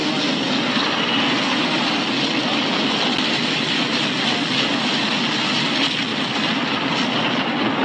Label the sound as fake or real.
real